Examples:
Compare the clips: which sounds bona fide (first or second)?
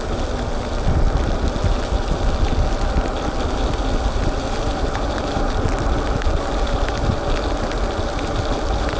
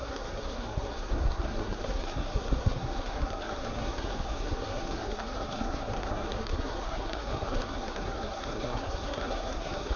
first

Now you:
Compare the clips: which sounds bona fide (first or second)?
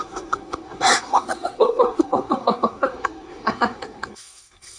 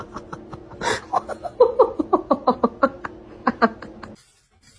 second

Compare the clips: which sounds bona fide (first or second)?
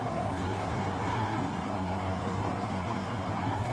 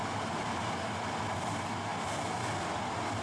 second